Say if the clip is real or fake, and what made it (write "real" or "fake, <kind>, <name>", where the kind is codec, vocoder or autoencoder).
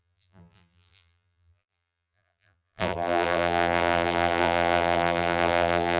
fake, vocoder, BigVGAN v2